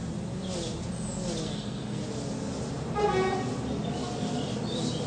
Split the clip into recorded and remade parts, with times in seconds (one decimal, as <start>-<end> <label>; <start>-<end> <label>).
0.0-1.4 recorded; 1.4-2.0 remade; 2.0-5.1 recorded